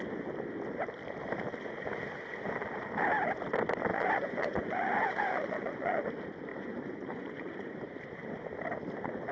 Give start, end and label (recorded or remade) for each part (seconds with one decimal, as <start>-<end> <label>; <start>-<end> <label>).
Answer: 0.0-3.9 recorded; 3.9-6.1 remade; 6.1-6.5 recorded; 6.5-7.8 remade; 7.8-9.3 recorded